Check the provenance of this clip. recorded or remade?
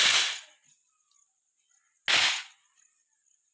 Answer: recorded